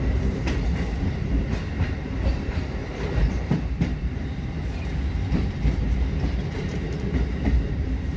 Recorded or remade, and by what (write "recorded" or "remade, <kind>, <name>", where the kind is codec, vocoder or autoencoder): remade, vocoder, BigVGAN v2